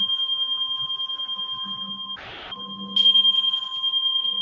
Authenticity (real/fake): real